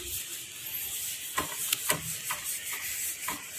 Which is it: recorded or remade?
recorded